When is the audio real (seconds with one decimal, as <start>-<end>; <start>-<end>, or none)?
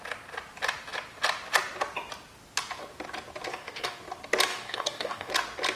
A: 0.0-3.5; 4.0-4.5; 5.3-5.8